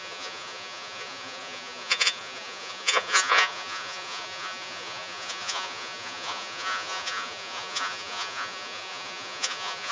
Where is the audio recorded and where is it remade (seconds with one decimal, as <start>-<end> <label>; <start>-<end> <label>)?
0.0-9.9 remade